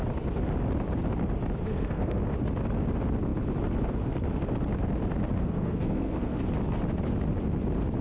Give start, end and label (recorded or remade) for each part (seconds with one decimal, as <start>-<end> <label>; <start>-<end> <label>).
0.0-1.7 recorded; 1.7-2.2 remade; 2.2-5.4 recorded; 5.4-6.4 remade; 6.4-8.0 recorded